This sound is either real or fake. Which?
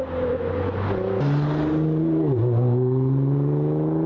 real